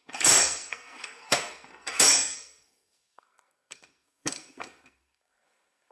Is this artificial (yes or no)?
yes